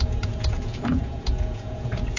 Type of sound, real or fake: fake